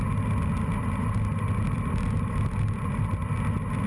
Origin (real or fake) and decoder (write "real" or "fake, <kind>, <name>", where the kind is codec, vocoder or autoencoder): real